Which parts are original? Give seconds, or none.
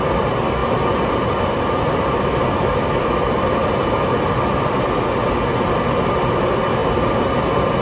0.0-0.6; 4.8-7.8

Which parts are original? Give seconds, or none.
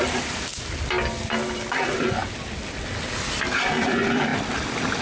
0.5-1.1; 2.2-3.6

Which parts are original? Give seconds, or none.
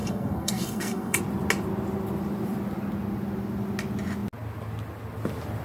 1.2-5.6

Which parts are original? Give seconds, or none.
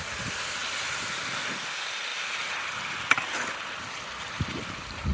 0.0-0.6; 1.2-2.1; 4.3-5.1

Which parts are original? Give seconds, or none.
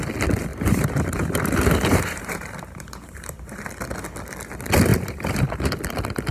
0.0-0.5; 3.7-4.9; 5.7-6.3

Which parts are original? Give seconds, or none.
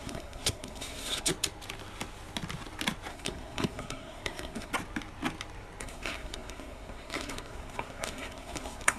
1.3-3.1; 4.7-5.8